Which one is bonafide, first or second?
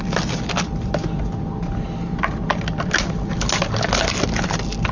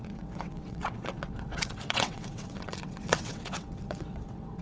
first